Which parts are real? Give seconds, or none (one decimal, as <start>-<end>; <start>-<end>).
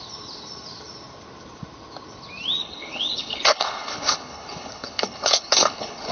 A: 0.0-2.6